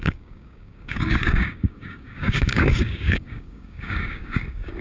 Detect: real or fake fake